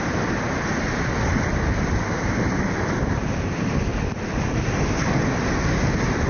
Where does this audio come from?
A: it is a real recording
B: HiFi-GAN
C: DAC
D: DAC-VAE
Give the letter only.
A